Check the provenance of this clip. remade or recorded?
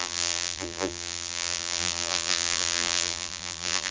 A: remade